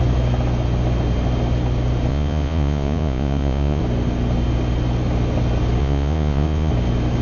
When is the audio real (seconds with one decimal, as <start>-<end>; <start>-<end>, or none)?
0.0-2.1; 3.8-5.8; 6.7-7.2